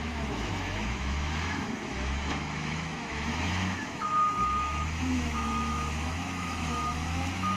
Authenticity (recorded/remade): remade